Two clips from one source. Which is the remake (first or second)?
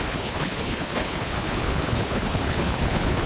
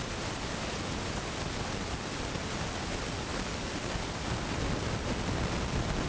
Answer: first